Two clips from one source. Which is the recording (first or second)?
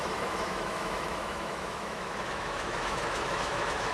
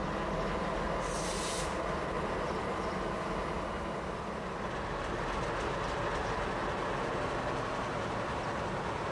second